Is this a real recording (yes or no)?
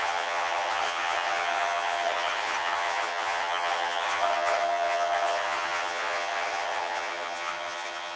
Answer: no